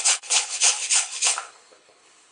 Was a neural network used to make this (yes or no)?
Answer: yes